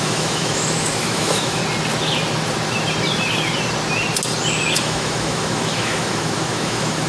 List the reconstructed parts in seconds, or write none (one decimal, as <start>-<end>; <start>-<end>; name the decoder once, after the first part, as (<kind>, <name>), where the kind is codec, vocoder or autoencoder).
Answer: 0.0-1.6 (autoencoder, DAC-VAE); 4.8-7.1